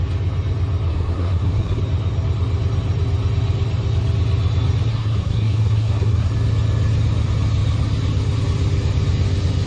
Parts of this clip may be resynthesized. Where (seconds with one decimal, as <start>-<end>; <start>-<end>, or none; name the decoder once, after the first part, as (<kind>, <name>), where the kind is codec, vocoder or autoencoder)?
0.9-1.8 (codec, SNAC); 4.9-6.3